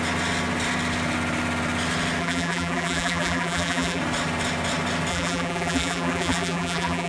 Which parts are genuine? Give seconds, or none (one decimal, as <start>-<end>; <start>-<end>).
0.0-2.2; 4.0-5.1